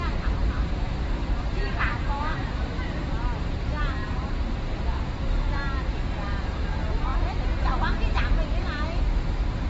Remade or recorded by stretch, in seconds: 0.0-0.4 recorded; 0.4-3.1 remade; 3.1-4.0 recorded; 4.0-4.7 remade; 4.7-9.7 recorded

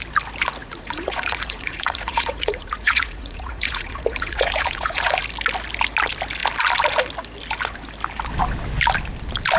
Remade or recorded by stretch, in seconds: 0.0-0.6 recorded; 0.6-5.2 remade; 5.2-9.6 recorded

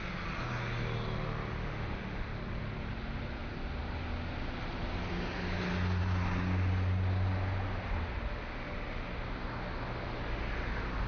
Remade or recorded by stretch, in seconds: 0.0-1.6 recorded; 1.6-2.4 remade; 2.4-11.1 recorded

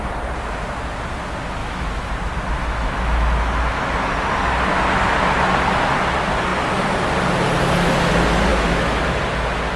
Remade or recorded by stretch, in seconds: 0.0-1.6 recorded; 1.6-2.1 remade; 2.1-2.6 recorded; 2.6-4.1 remade; 4.1-8.5 recorded; 8.5-9.0 remade; 9.0-9.8 recorded

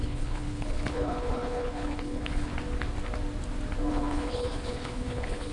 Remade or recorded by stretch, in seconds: 0.0-2.5 remade; 2.5-3.9 recorded; 3.9-5.5 remade

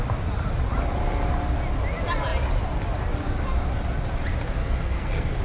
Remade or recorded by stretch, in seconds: 0.0-4.6 recorded; 4.6-5.4 remade

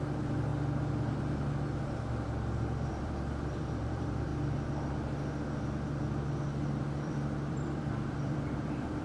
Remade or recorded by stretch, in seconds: 0.0-0.5 remade; 0.5-2.1 recorded; 2.1-4.3 remade; 4.3-6.8 recorded; 6.8-9.0 remade